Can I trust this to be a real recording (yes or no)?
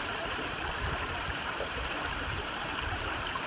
no